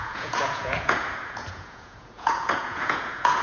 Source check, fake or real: fake